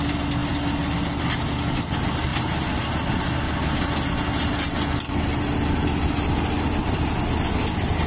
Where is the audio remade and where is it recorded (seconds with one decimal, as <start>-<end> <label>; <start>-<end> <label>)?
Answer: 0.0-8.1 recorded